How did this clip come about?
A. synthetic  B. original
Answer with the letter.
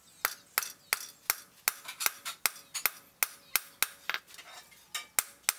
B